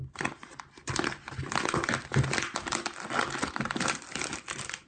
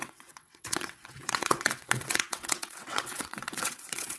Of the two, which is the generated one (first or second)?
second